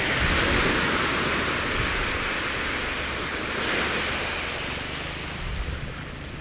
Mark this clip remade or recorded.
recorded